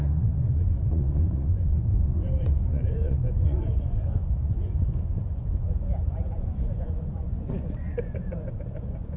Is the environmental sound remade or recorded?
remade